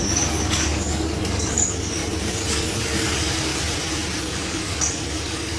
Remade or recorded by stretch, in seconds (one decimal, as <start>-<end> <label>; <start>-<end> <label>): 0.0-2.0 remade; 2.0-2.5 recorded; 2.5-3.5 remade; 3.5-4.2 recorded; 4.2-5.6 remade